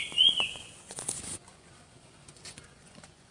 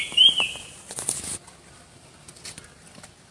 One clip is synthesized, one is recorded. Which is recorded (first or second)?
second